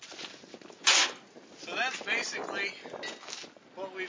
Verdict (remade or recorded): recorded